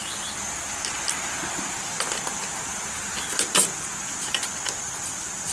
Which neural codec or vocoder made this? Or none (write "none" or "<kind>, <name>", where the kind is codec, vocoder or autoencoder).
none